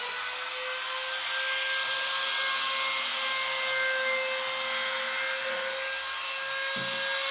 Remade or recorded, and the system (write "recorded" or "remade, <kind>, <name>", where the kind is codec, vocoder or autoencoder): recorded